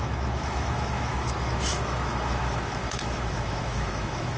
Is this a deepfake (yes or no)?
yes